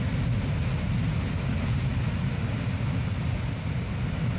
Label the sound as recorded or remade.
recorded